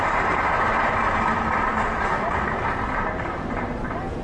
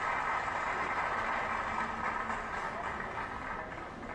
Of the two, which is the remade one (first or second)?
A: first